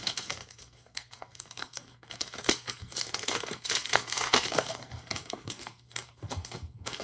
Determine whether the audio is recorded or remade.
remade